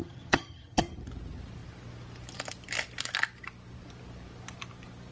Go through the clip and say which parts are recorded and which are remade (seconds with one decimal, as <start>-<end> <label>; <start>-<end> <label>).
0.0-0.8 remade; 0.8-5.1 recorded